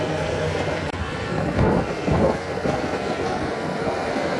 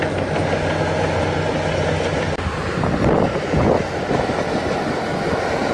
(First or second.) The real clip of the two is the second